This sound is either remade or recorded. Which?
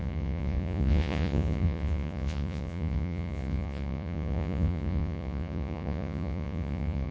remade